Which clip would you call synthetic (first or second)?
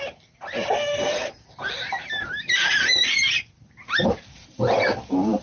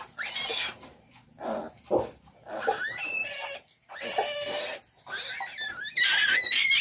first